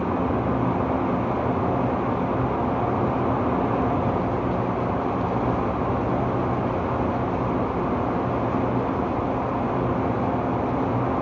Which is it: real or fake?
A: real